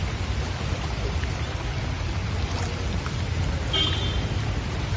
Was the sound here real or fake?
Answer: real